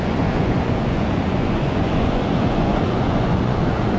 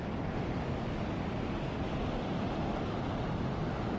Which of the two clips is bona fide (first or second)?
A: second